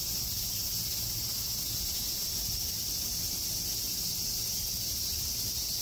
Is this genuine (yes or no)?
yes